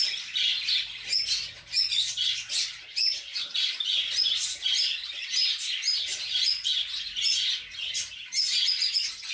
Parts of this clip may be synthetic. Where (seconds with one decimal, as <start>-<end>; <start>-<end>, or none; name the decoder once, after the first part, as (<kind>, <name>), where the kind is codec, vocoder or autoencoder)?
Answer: none